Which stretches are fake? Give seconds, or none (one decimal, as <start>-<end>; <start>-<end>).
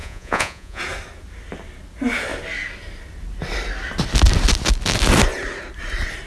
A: 0.0-0.8